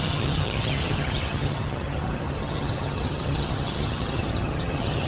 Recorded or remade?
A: remade